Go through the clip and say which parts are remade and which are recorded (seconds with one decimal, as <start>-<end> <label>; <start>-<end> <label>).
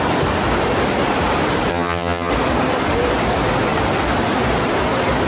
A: 0.0-1.7 recorded; 1.7-2.3 remade; 2.3-5.3 recorded